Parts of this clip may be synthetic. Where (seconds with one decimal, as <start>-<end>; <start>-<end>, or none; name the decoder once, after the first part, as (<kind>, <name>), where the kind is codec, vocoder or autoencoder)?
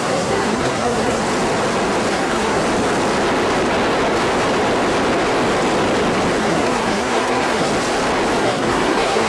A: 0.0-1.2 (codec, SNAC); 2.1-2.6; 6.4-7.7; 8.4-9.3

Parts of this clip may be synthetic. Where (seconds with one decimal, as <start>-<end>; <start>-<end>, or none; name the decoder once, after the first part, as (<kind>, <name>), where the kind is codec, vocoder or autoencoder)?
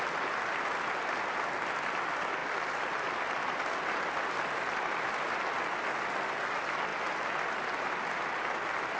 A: none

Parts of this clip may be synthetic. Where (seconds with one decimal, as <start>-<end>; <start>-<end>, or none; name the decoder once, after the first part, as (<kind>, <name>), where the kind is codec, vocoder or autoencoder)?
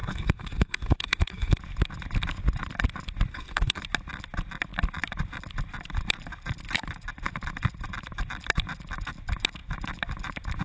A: 0.0-1.6 (codec, SNAC); 3.3-3.8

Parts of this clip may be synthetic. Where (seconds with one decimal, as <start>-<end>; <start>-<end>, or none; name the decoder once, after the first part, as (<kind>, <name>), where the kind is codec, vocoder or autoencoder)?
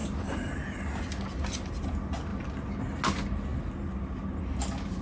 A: none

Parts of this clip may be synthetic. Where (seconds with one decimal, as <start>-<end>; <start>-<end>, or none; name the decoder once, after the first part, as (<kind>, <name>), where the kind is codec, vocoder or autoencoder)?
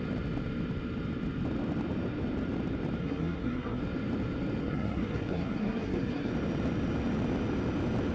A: 3.0-3.8 (codec, SNAC); 4.6-6.3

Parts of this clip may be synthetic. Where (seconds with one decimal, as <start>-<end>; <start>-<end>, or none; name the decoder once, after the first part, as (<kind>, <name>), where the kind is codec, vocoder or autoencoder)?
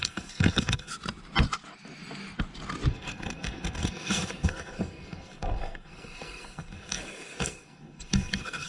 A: 0.0-0.9 (codec, SNAC); 2.9-8.7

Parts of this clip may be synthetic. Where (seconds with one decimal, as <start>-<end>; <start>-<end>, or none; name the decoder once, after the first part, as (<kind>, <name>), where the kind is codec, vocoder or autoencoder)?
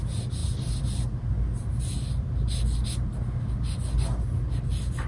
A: none